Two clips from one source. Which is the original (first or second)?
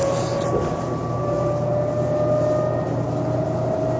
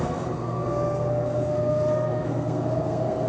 first